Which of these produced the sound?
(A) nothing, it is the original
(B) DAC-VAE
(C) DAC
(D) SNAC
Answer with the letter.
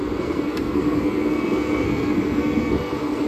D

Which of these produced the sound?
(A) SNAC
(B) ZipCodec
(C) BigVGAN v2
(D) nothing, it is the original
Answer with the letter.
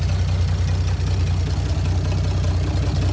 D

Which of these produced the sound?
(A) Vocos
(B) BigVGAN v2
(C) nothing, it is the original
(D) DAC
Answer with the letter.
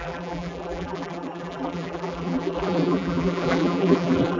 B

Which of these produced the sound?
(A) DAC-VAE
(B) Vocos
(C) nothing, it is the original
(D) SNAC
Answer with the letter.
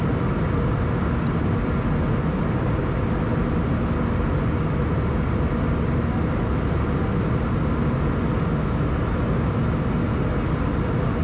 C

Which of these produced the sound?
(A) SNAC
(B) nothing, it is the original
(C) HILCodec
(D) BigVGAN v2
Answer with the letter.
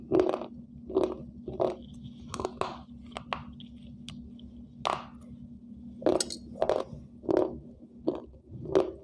B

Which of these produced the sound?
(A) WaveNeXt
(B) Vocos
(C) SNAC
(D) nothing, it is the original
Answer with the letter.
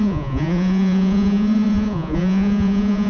B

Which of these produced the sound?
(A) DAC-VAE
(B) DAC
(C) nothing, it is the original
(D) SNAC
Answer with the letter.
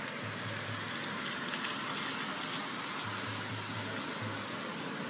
C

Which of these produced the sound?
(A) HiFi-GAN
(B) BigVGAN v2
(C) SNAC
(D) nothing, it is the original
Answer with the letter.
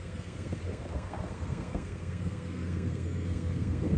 C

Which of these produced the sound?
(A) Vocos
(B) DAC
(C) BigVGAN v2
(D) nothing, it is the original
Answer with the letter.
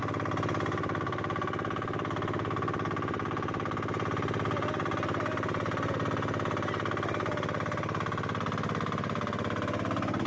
D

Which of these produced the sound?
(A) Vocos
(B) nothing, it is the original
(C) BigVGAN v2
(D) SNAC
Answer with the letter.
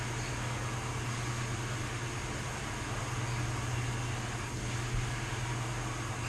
B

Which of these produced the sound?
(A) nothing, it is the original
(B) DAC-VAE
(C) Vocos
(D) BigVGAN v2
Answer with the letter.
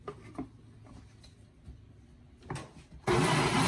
A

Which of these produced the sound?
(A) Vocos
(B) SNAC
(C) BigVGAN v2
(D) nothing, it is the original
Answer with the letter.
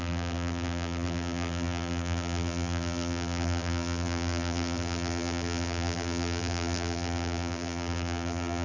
C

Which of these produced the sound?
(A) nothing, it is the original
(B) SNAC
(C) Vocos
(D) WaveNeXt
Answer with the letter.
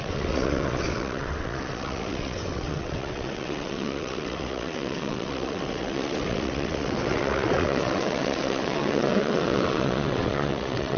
D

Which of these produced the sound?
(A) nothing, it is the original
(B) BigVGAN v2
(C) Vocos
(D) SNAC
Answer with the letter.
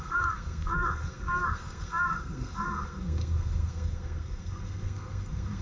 D